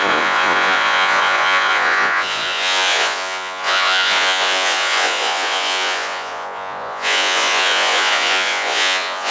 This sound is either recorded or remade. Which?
remade